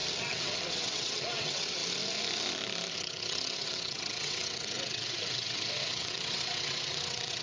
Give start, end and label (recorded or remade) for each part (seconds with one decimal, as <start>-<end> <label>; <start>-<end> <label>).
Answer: 0.0-1.8 remade; 1.8-2.9 recorded; 2.9-7.4 remade